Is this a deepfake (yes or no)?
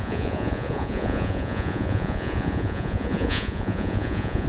yes